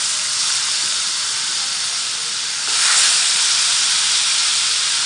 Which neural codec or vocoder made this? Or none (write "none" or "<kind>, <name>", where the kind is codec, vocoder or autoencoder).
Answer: none